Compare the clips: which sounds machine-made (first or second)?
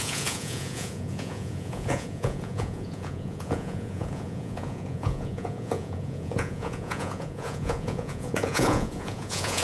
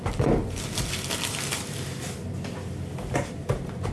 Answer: first